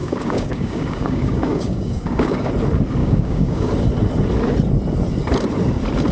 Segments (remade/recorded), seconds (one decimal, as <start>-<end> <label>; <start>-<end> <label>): 0.0-2.5 remade; 2.5-3.0 recorded; 3.0-3.7 remade; 3.7-6.1 recorded